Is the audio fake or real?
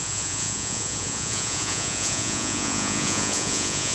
fake